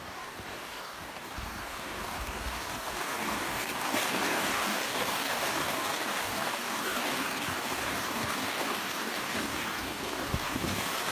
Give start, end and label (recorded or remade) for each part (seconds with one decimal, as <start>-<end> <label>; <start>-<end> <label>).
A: 0.0-11.1 remade